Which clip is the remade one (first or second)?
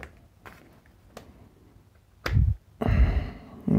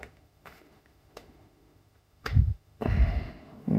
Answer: second